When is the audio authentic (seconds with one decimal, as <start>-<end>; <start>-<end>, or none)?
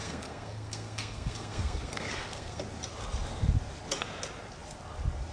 2.6-5.3